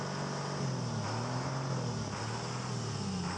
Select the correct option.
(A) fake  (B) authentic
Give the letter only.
B